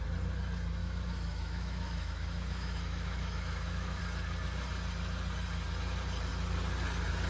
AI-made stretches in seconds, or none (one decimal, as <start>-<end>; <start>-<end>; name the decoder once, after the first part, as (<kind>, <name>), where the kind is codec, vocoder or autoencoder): 0.8-4.0 (autoencoder, DAC-VAE)